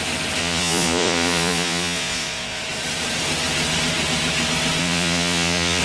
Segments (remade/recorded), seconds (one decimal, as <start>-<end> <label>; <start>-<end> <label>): 0.0-0.4 recorded; 0.4-2.6 remade; 2.6-4.8 recorded; 4.8-5.8 remade